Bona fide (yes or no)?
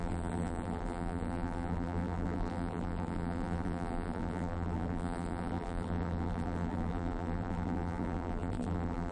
no